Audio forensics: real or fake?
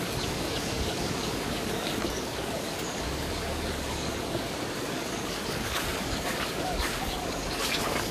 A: fake